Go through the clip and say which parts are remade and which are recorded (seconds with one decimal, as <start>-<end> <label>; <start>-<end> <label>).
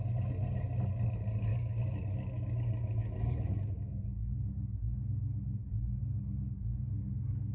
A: 0.0-1.5 recorded; 1.5-3.9 remade; 3.9-7.5 recorded